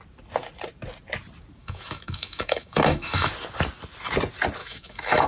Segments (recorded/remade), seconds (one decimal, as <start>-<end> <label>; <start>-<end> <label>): 0.0-1.6 recorded; 1.6-3.3 remade; 3.3-4.6 recorded; 4.6-5.3 remade